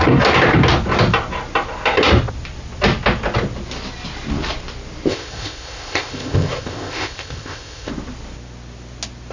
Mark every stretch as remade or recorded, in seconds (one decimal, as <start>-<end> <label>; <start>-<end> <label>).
0.0-5.1 recorded; 5.1-7.9 remade; 7.9-9.3 recorded